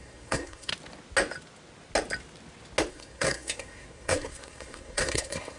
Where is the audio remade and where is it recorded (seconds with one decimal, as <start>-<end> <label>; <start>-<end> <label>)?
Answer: 0.0-0.7 remade; 0.7-2.9 recorded; 2.9-5.6 remade